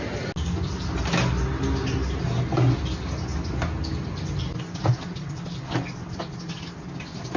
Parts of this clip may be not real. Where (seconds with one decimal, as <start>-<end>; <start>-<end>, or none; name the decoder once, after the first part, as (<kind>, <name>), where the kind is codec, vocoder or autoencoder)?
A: none